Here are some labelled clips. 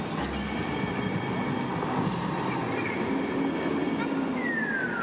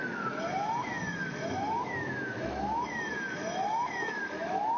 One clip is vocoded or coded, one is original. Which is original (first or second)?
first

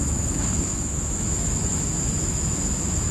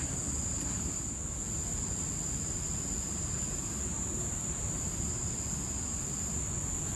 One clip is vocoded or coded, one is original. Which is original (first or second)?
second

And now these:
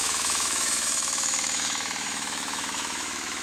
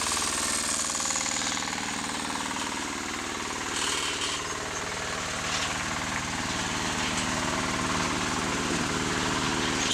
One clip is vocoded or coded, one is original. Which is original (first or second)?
second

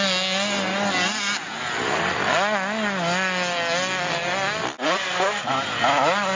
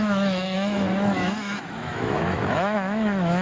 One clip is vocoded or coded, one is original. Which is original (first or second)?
first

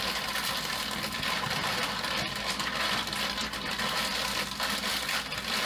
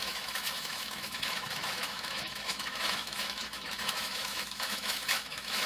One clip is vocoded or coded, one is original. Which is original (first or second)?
first